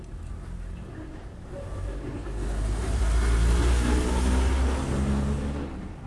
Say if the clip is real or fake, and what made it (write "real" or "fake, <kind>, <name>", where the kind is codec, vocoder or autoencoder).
real